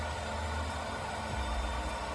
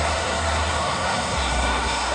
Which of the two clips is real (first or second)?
first